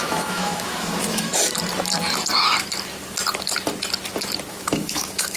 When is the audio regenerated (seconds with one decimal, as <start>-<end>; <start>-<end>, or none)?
0.0-1.3; 4.5-5.4